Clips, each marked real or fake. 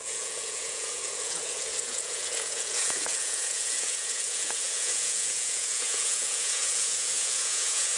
fake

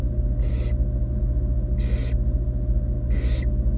real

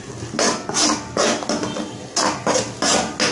real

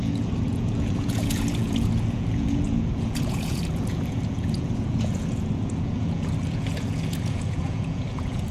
fake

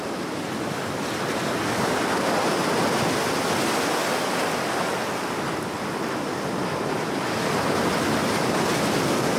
real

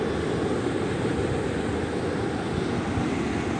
real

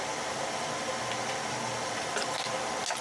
real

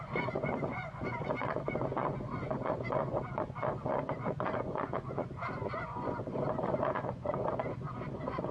fake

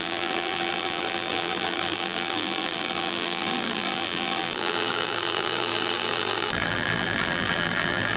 fake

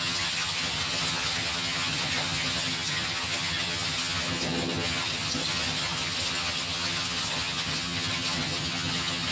fake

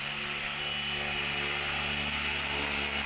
real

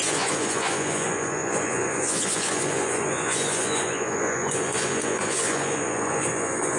fake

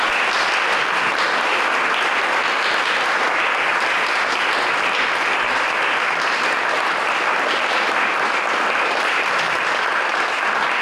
real